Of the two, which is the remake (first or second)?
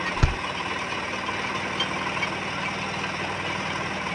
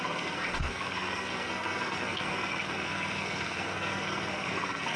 second